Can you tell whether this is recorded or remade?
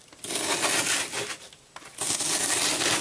recorded